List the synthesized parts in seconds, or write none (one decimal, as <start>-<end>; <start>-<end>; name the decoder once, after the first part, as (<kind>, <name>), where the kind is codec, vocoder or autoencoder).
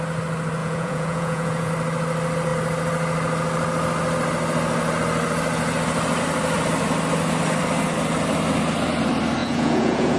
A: 0.6-1.7 (vocoder, Vocos); 9.4-10.2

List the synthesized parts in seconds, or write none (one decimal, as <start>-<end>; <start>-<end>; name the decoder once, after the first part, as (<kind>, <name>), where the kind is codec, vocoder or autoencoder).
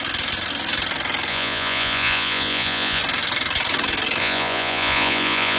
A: 1.3-3.0 (vocoder, Vocos); 4.2-5.6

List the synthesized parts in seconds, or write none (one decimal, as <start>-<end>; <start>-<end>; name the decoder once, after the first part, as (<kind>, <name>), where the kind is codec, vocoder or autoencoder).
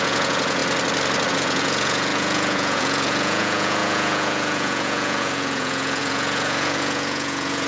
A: 0.0-0.6 (vocoder, Vocos); 1.3-7.7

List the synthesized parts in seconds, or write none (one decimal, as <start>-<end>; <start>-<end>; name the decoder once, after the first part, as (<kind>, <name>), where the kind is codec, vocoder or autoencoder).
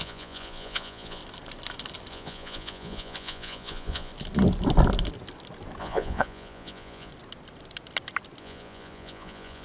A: 0.0-1.2 (vocoder, Vocos); 2.1-4.1; 5.8-7.1; 8.4-9.6